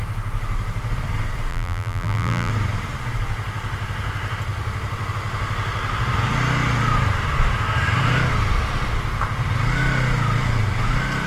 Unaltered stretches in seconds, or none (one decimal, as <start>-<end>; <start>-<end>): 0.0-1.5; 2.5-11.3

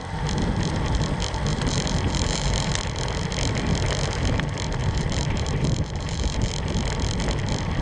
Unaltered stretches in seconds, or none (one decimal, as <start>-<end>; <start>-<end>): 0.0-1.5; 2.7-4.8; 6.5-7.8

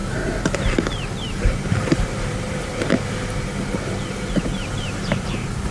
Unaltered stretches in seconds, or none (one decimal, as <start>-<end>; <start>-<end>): 0.0-1.4; 2.7-4.6